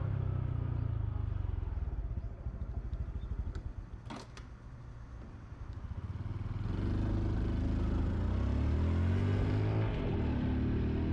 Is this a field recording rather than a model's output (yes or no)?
yes